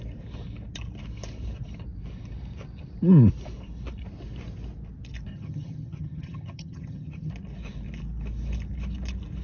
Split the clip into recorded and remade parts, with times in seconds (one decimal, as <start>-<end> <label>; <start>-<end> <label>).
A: 0.0-5.3 recorded; 5.3-7.3 remade; 7.3-9.4 recorded